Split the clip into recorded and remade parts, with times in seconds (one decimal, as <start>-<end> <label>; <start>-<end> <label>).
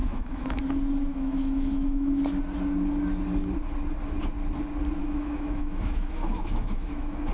0.0-0.6 remade; 0.6-1.1 recorded; 1.1-2.2 remade; 2.2-5.0 recorded; 5.0-7.3 remade